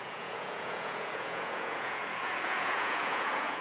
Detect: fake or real fake